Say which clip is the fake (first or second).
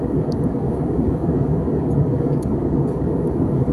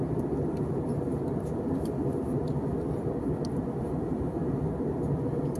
first